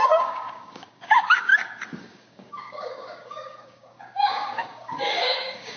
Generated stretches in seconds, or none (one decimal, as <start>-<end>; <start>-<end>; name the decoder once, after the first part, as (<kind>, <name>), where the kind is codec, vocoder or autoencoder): 0.0-1.5 (codec, DAC); 2.0-5.8